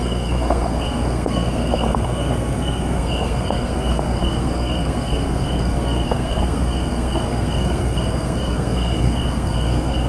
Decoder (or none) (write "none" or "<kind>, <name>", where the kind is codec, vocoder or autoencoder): codec, SNAC